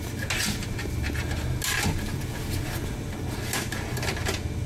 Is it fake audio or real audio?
real